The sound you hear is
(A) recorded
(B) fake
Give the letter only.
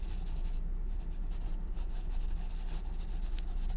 A